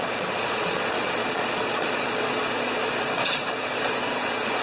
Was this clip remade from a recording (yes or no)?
yes